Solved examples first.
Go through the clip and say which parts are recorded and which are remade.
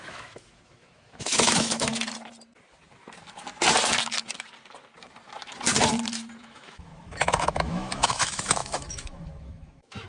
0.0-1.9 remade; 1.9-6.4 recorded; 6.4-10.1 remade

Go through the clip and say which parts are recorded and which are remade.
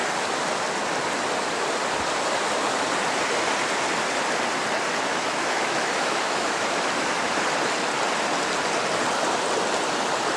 0.0-5.1 recorded; 5.1-7.3 remade; 7.3-10.4 recorded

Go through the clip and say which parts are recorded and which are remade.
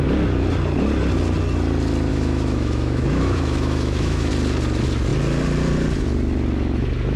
0.0-2.1 recorded; 2.1-4.3 remade; 4.3-7.2 recorded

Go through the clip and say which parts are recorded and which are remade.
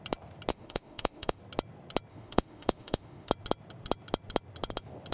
0.0-0.5 recorded; 0.5-1.4 remade; 1.4-2.1 recorded; 2.1-3.3 remade; 3.3-5.1 recorded